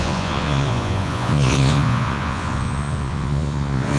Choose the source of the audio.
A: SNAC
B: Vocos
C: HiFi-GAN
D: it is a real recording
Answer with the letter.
B